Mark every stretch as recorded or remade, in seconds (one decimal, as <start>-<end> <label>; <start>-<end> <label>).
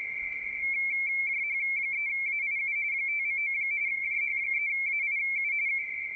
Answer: 0.0-3.8 recorded; 3.8-4.6 remade; 4.6-6.2 recorded